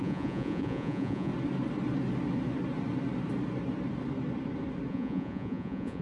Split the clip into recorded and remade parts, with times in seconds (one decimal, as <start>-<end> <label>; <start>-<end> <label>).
0.0-1.3 remade; 1.3-4.9 recorded; 4.9-6.0 remade